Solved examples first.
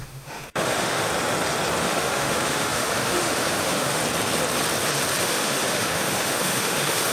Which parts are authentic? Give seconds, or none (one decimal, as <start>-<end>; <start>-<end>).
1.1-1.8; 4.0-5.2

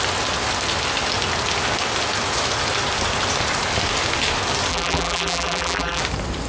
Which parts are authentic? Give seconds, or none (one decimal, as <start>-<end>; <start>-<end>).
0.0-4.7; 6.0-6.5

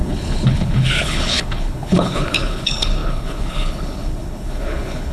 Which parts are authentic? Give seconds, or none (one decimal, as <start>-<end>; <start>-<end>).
none

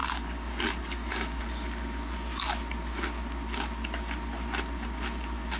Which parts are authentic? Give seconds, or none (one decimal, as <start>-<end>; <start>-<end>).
1.4-5.6

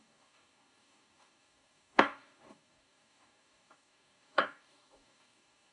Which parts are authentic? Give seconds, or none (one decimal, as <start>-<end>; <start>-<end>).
none

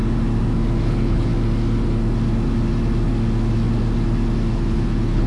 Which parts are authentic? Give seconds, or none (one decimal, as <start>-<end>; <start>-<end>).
0.0-0.8; 1.3-4.5